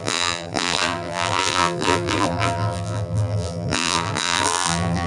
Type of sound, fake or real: fake